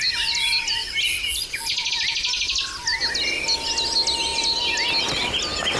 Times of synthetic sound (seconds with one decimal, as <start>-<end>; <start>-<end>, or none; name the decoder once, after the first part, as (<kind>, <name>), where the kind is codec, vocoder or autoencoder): none